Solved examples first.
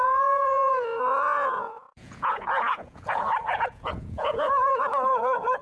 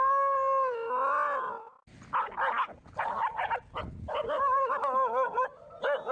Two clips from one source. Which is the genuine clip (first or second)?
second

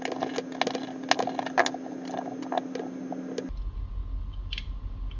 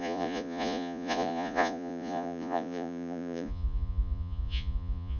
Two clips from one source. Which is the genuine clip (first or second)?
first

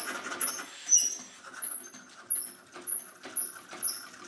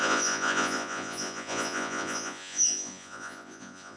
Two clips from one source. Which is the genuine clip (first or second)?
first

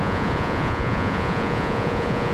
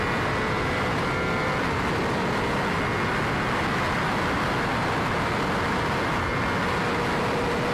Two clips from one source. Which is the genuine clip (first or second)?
second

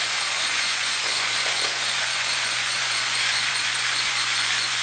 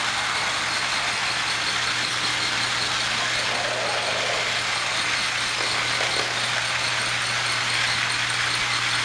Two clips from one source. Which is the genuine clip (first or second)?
second